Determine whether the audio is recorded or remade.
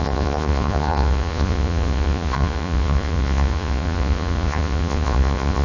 remade